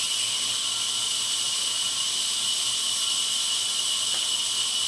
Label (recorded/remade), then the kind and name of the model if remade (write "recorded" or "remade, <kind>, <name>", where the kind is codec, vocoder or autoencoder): recorded